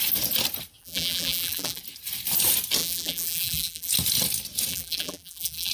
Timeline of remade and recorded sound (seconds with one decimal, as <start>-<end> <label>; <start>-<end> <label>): 0.0-0.8 recorded; 0.8-1.8 remade; 1.8-2.8 recorded; 2.8-3.9 remade; 3.9-4.7 recorded; 4.7-5.7 remade